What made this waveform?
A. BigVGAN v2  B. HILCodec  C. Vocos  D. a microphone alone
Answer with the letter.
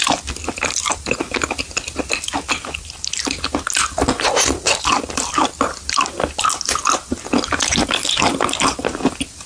D